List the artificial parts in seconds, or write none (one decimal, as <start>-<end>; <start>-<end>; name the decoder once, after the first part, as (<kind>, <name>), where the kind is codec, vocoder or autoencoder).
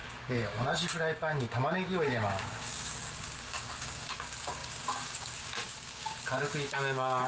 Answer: 0.0-7.3 (codec, DAC)